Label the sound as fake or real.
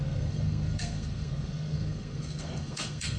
fake